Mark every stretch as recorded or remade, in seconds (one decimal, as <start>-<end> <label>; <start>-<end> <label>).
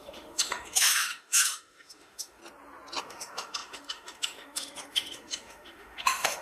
0.0-2.4 remade; 2.4-3.0 recorded; 3.0-6.4 remade